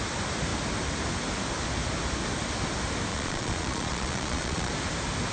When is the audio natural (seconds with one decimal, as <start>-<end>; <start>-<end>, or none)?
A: 0.0-3.1; 4.7-5.3